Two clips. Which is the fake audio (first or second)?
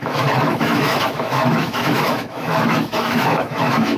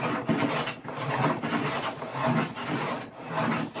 first